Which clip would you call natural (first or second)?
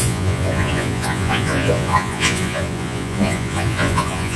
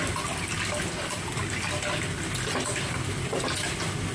second